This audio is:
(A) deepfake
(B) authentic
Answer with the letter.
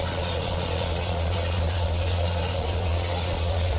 A